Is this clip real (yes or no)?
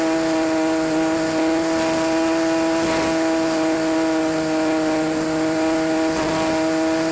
yes